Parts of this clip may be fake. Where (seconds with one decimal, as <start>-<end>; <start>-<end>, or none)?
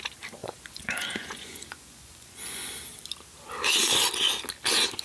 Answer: 0.4-2.7